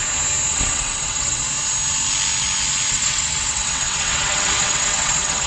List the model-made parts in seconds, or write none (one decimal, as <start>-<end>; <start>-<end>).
0.5-1.4; 2.9-5.5